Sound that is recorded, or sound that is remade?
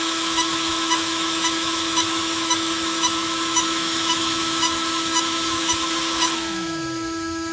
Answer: remade